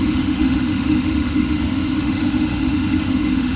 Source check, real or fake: fake